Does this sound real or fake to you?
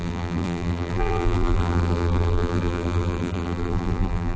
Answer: fake